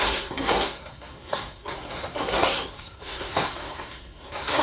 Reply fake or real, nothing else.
fake